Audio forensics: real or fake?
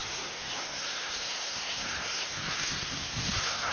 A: fake